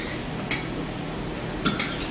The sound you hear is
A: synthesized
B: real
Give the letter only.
B